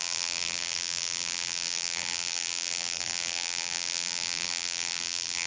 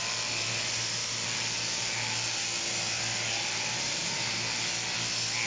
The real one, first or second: second